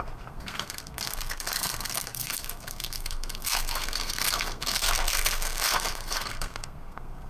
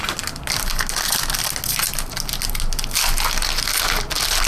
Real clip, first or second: second